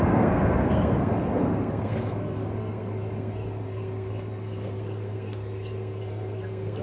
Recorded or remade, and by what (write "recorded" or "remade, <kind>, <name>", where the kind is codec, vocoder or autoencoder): remade, codec, SNAC